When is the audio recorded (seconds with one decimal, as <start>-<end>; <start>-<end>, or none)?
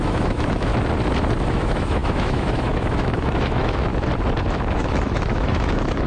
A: 0.7-1.5; 3.9-4.7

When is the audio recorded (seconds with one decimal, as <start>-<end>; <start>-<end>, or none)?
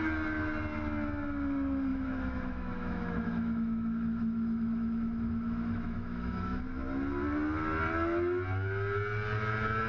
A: 0.0-1.9; 6.6-9.9